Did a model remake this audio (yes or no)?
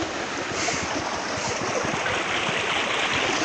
no